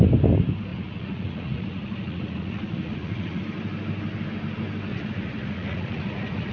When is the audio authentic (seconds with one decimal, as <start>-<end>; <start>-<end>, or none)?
0.0-0.7; 3.4-4.9